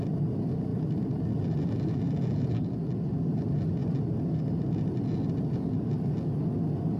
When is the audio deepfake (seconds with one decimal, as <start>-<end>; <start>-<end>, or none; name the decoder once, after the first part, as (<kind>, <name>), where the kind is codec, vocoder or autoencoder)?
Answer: 0.7-2.7 (vocoder, BigVGAN v2); 3.8-5.5